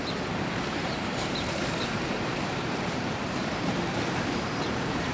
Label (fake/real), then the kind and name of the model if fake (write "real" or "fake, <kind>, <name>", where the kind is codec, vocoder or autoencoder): fake, vocoder, BigVGAN v2